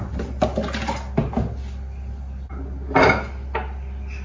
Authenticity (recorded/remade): recorded